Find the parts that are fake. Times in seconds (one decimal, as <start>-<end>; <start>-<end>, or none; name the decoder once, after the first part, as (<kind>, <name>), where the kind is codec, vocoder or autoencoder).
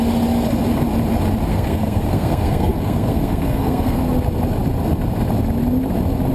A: 1.5-4.0 (codec, SNAC)